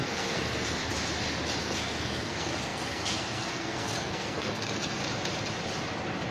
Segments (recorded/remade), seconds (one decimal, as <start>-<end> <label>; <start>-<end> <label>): 0.0-0.8 remade; 0.8-1.6 recorded; 1.6-5.0 remade; 5.0-6.3 recorded